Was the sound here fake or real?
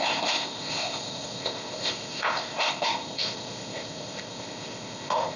fake